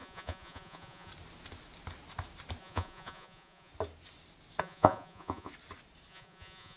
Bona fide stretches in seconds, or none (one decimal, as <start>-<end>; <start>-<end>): 1.1-2.6; 3.7-4.6; 5.5-6.1